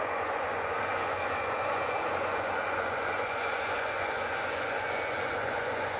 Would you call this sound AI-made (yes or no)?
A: yes